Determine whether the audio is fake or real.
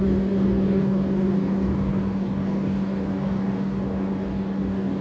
fake